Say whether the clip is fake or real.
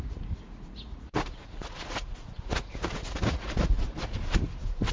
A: fake